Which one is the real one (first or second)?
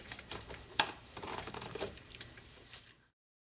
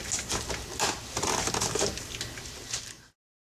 second